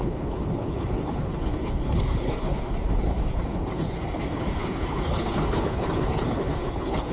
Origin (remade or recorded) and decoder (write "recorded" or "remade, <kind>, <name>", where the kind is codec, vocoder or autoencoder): remade, codec, HILCodec